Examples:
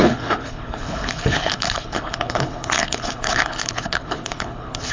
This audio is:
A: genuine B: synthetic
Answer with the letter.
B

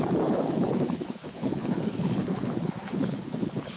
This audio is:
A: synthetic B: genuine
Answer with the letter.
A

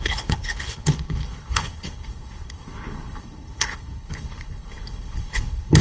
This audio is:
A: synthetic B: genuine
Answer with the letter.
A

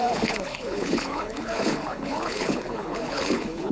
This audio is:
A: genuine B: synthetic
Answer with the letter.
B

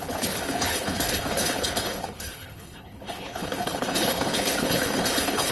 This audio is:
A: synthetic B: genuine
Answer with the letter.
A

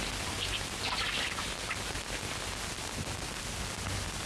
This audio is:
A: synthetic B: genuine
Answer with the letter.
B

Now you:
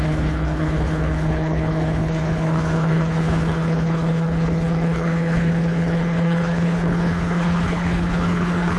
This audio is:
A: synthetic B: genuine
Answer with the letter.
A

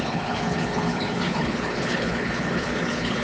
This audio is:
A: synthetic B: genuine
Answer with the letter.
A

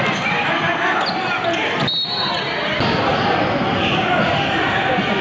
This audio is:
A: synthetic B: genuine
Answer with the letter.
B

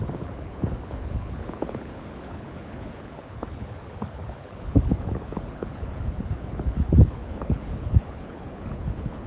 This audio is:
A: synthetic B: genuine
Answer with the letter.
A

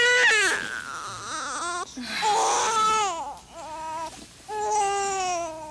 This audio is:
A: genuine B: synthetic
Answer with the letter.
A